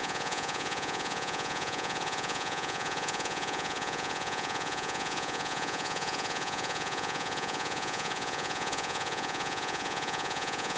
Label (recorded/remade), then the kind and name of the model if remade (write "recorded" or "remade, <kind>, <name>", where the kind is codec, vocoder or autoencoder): remade, vocoder, Vocos